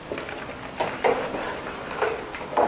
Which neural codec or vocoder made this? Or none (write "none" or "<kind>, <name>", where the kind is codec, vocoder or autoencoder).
none